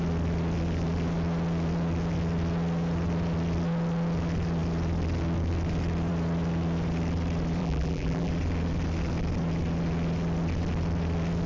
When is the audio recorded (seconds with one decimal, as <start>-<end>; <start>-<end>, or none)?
0.0-7.6; 8.3-11.5